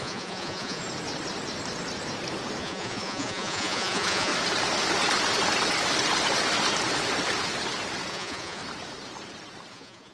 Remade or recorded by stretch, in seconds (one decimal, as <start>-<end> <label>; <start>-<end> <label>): 0.0-0.8 remade; 0.8-2.6 recorded; 2.6-4.3 remade; 4.3-8.1 recorded; 8.1-8.6 remade; 8.6-9.7 recorded; 9.7-10.1 remade